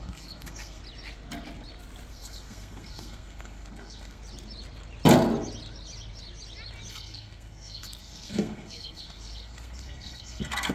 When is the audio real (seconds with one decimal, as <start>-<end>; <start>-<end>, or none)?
0.8-2.1; 4.2-6.9